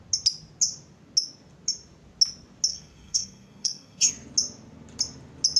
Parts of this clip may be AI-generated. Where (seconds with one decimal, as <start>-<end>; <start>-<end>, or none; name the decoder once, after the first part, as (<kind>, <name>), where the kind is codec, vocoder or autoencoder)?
2.7-4.1 (codec, SNAC)